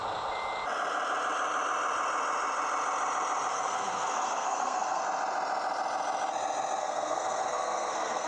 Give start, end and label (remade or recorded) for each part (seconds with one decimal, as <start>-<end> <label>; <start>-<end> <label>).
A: 0.0-3.5 recorded; 3.5-5.0 remade; 5.0-6.8 recorded; 6.8-8.3 remade